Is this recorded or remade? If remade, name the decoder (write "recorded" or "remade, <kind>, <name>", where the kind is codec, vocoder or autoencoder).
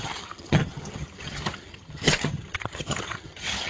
remade, vocoder, HiFi-GAN